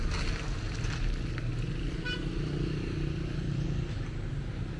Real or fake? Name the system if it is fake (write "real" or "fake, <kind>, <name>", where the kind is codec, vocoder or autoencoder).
real